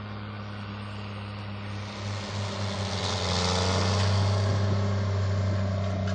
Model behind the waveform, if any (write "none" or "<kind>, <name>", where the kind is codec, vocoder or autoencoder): none